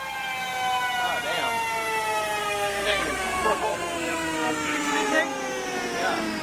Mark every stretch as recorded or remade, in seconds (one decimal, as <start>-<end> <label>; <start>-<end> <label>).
0.0-2.4 recorded; 2.4-5.2 remade; 5.2-6.4 recorded